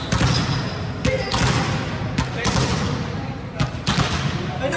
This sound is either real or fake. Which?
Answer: real